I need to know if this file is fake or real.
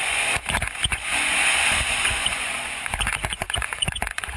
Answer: fake